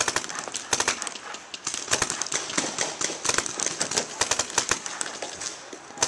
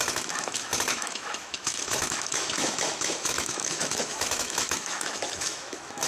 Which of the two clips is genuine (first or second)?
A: first